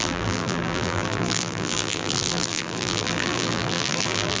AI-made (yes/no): yes